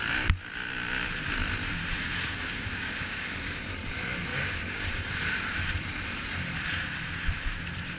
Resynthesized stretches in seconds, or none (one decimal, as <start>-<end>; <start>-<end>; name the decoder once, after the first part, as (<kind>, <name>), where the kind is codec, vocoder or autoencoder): 2.0-3.6 (codec, DAC); 4.3-5.1